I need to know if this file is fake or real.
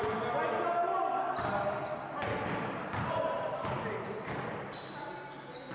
real